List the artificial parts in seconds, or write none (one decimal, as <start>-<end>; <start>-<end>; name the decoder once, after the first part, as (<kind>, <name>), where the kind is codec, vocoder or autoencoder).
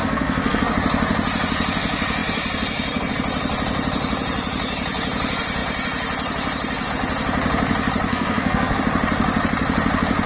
0.0-0.7 (codec, SNAC); 8.1-8.8